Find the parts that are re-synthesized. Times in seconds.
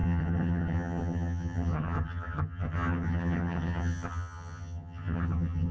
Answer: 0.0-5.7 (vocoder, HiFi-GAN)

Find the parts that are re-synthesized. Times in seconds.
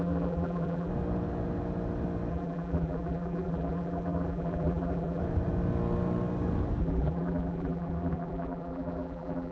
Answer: 0.0-0.9 (vocoder, BigVGAN v2); 2.3-5.2; 6.8-9.5